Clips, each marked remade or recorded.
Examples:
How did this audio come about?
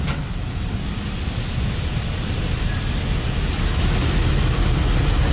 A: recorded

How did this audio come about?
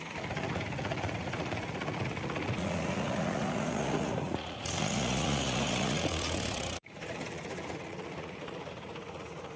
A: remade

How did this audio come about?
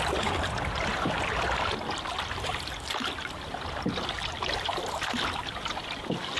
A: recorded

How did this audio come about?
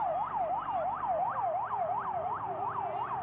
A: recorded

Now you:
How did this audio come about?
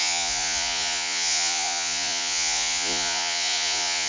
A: remade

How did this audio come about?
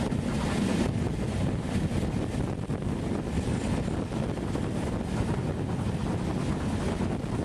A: recorded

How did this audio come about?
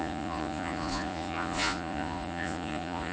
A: remade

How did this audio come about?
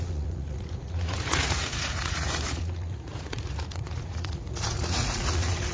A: remade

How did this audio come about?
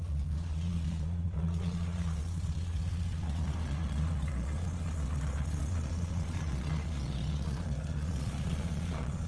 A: remade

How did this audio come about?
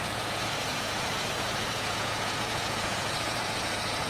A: remade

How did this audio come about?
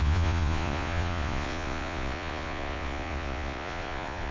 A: remade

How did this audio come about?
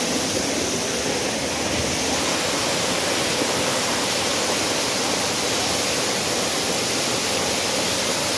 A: recorded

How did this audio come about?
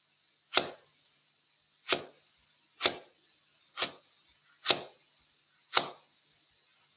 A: recorded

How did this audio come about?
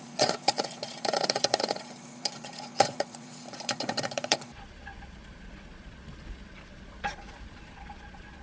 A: remade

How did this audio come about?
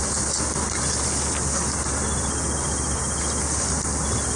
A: recorded